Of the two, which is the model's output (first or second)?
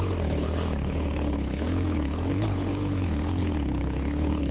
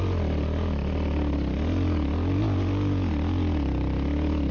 first